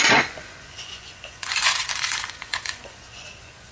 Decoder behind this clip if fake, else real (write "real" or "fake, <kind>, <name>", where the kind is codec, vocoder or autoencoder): fake, vocoder, Vocos